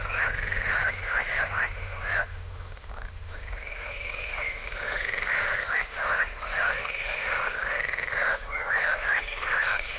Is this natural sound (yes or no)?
no